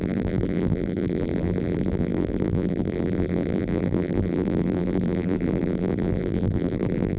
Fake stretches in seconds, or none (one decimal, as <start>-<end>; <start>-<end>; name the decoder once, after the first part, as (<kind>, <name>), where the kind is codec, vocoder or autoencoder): 0.0-7.2 (vocoder, BigVGAN v2)

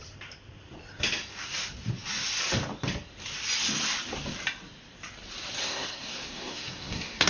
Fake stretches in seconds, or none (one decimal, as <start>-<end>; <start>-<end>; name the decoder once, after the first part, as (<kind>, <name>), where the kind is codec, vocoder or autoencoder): 5.6-7.3 (codec, SNAC)

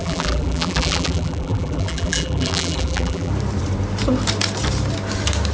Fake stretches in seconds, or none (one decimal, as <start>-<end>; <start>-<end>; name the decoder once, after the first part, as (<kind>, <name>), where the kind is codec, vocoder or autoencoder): 0.0-3.3 (vocoder, BigVGAN v2)